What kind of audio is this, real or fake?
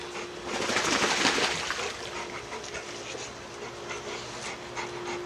real